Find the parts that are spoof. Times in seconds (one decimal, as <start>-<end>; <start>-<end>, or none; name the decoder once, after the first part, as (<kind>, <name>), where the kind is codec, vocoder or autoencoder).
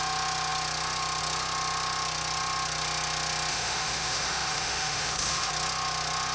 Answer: 3.5-5.5 (autoencoder, DAC-VAE)